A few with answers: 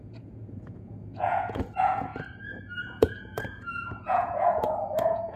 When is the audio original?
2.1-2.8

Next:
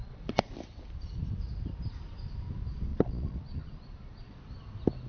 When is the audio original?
0.5-2.9; 4.3-5.1

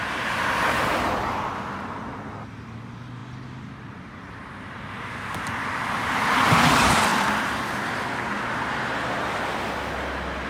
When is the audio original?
0.0-10.5

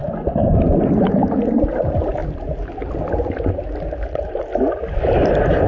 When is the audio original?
0.0-0.8; 2.2-3.5; 4.5-5.1